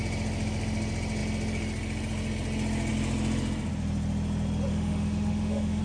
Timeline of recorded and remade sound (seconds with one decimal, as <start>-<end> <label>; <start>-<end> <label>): 0.0-4.7 recorded; 4.7-5.8 remade